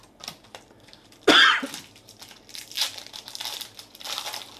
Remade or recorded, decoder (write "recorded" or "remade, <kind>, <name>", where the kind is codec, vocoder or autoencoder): recorded